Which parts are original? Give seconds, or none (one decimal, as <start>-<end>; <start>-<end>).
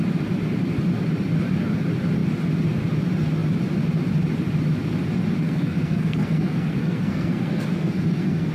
0.0-5.4